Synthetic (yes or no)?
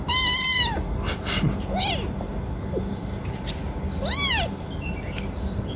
no